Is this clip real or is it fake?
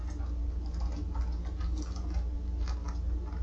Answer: real